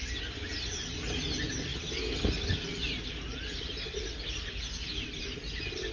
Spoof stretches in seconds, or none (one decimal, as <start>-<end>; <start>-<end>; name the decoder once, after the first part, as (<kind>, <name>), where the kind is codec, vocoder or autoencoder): none